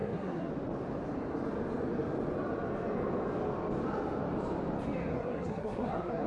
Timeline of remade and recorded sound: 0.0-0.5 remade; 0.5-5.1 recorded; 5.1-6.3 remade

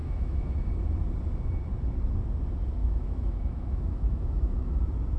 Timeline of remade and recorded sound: 0.0-0.6 remade; 0.6-2.8 recorded; 2.8-4.8 remade; 4.8-5.2 recorded